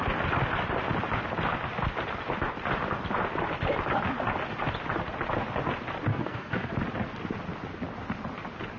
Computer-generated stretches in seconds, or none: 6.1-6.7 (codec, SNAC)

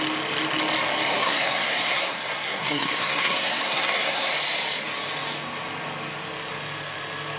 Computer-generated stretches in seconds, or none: 1.1-4.3 (codec, SNAC)

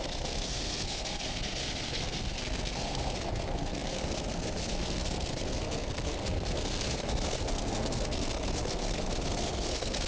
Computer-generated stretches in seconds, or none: 0.0-10.1 (codec, SNAC)

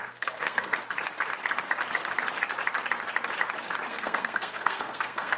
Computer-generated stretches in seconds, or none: 0.0-0.7 (codec, SNAC); 3.9-5.4

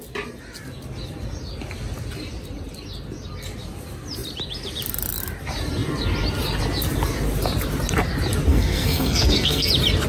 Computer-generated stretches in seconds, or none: 8.5-9.7 (codec, SNAC)

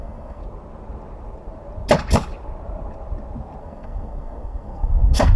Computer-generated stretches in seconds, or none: 0.0-0.4 (codec, SNAC); 3.6-5.4

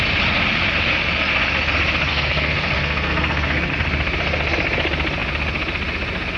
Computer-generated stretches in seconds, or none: 2.1-3.7 (codec, SNAC)